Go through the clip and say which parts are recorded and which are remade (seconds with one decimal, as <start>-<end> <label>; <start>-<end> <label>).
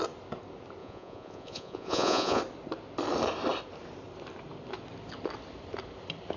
0.0-0.8 recorded; 0.8-2.4 remade; 2.4-6.4 recorded